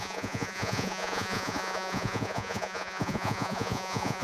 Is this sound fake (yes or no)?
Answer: yes